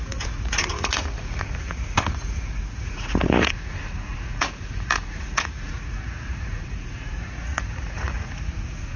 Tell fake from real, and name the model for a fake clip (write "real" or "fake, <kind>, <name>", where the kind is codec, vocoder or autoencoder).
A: fake, vocoder, Vocos